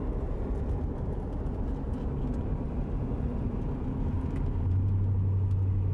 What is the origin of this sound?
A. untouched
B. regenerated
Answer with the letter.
A